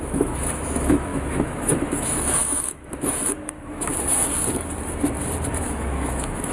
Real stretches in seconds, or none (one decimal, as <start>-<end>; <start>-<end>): 3.9-5.5